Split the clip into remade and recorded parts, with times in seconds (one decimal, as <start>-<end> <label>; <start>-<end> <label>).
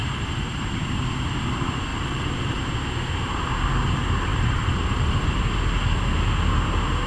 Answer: 0.0-0.6 remade; 0.6-1.9 recorded; 1.9-2.7 remade; 2.7-4.3 recorded; 4.3-5.4 remade; 5.4-7.1 recorded